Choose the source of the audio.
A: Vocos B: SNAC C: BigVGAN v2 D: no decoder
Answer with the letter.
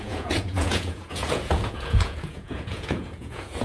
A